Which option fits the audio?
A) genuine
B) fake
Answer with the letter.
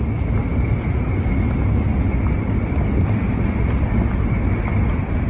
A